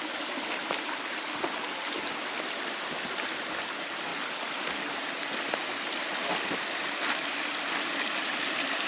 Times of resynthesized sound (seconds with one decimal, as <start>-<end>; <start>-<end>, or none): none